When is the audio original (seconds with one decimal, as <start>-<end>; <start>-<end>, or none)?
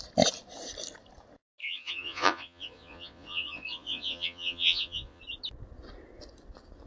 0.0-1.6; 5.2-6.9